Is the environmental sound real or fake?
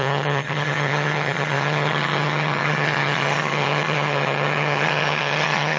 fake